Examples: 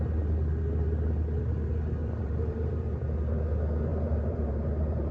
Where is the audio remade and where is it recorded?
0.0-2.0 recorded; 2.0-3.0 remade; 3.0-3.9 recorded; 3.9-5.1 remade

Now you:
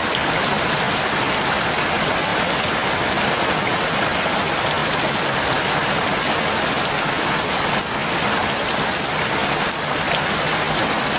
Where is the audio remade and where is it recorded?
0.0-11.2 recorded

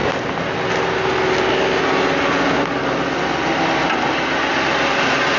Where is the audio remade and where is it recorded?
0.0-5.4 recorded

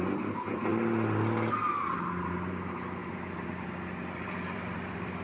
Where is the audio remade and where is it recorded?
0.0-3.0 recorded; 3.0-5.2 remade